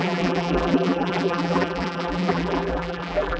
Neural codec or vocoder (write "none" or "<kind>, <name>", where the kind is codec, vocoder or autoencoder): vocoder, BigVGAN v2